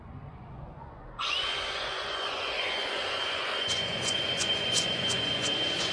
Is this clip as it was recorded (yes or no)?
no